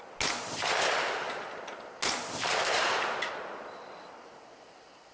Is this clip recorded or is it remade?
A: recorded